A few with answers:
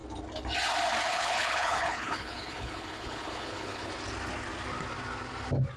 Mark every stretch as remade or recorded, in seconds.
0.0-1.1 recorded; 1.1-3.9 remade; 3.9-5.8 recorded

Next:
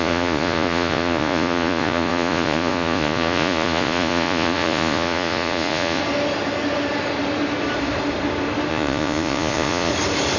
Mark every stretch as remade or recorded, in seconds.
0.0-6.0 remade; 6.0-8.7 recorded; 8.7-9.9 remade; 9.9-10.4 recorded

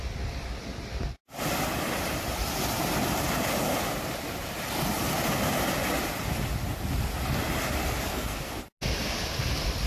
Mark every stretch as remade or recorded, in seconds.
0.0-8.1 recorded; 8.1-8.6 remade; 8.6-9.9 recorded

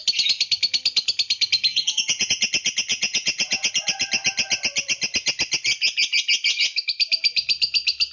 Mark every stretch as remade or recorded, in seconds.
0.0-1.7 recorded; 1.7-2.3 remade; 2.3-2.9 recorded; 2.9-3.7 remade; 3.7-8.1 recorded

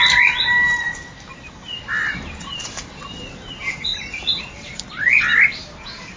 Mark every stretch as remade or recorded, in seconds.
0.0-5.6 recorded; 5.6-6.2 remade

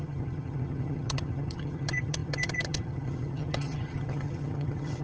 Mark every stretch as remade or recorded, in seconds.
0.0-5.0 remade

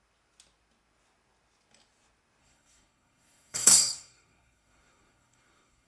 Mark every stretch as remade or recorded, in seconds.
0.0-2.4 recorded; 2.4-5.9 remade